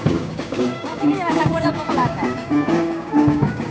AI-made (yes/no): yes